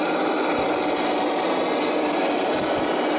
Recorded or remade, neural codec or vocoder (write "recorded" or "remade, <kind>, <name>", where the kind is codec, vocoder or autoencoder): recorded